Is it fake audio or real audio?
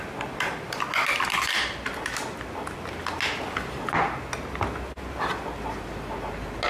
real